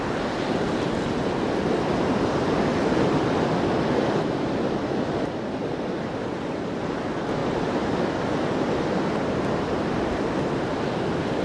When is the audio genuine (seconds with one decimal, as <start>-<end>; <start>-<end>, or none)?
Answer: none